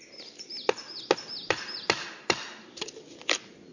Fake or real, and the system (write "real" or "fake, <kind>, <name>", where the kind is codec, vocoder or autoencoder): real